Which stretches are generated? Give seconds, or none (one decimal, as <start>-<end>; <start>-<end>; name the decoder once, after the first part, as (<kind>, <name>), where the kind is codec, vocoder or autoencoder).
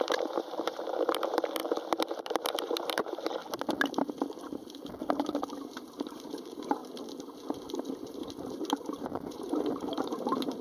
0.0-1.6 (vocoder, BigVGAN v2); 2.2-3.4; 5.5-6.8; 8.0-10.6